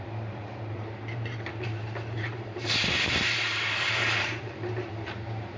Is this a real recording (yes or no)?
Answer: no